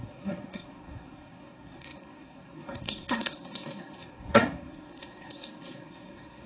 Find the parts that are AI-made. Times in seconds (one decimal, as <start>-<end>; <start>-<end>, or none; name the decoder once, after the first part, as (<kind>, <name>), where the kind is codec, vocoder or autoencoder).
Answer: 0.0-6.5 (codec, SNAC)